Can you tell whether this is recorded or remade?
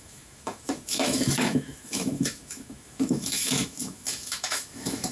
remade